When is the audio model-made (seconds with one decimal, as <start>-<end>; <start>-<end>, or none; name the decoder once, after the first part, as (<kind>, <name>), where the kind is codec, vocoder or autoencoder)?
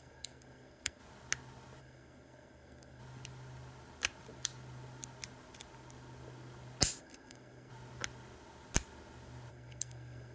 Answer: 0.0-1.0 (codec, SNAC); 1.8-3.0; 7.0-7.7; 9.5-10.3